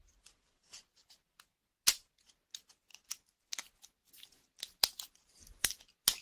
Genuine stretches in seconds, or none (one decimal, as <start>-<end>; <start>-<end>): 0.0-2.9; 3.4-4.0; 5.8-6.2